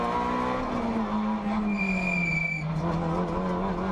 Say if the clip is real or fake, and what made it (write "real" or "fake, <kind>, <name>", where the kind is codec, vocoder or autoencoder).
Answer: real